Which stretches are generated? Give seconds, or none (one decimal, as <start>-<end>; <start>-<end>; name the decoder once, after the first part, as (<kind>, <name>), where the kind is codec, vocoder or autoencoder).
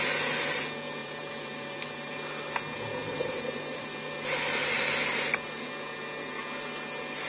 1.0-2.1 (vocoder, BigVGAN v2); 3.0-3.9